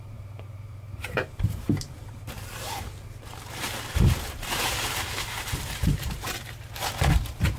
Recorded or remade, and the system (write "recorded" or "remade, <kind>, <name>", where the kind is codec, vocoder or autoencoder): remade, vocoder, BigVGAN v2